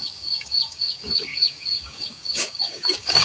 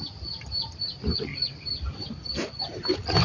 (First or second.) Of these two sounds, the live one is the second